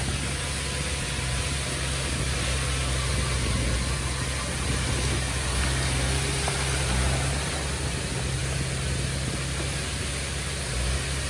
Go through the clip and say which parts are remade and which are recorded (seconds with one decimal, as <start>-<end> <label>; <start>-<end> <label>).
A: 0.0-11.3 recorded

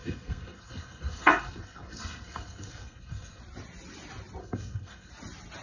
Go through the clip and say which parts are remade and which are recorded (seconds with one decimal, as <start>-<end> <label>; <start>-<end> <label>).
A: 0.0-3.4 remade; 3.4-4.4 recorded; 4.4-5.1 remade; 5.1-5.6 recorded